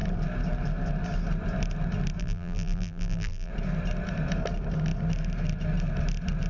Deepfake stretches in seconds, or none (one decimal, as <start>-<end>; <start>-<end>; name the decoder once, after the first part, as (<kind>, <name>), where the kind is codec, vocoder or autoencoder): 2.2-3.5 (vocoder, BigVGAN v2)